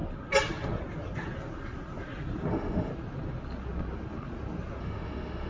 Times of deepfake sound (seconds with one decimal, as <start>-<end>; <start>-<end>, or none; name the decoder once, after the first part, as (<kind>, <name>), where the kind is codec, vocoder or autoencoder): 2.5-2.9 (autoencoder, DAC-VAE); 4.8-5.5